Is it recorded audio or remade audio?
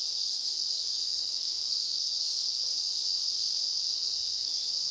remade